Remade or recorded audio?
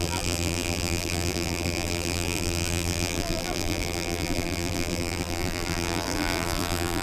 remade